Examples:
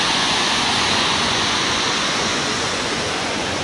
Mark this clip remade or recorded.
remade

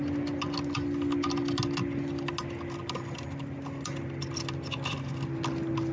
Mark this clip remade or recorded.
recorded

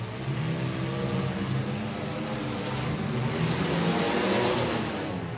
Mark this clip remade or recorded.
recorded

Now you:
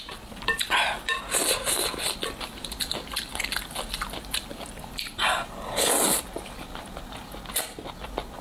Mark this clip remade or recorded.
recorded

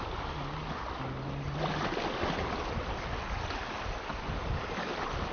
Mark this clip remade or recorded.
recorded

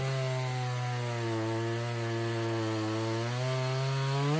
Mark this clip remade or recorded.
recorded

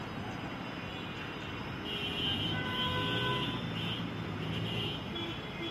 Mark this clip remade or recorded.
recorded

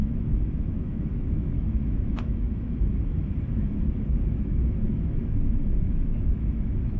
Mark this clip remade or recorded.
remade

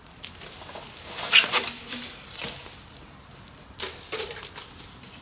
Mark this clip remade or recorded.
recorded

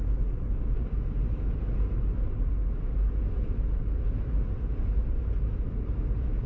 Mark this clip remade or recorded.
remade